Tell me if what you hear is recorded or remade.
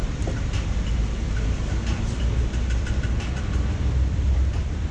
remade